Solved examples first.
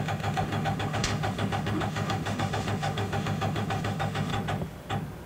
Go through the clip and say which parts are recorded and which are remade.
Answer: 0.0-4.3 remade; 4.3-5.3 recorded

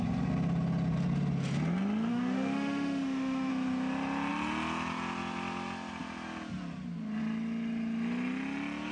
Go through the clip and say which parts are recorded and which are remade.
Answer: 0.0-2.1 recorded; 2.1-3.5 remade; 3.5-8.9 recorded

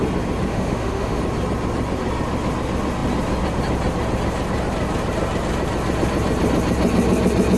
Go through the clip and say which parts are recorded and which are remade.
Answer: 0.0-0.5 recorded; 0.5-1.2 remade; 1.2-7.6 recorded